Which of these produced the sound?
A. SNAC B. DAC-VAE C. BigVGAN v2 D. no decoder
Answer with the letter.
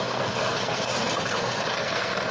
A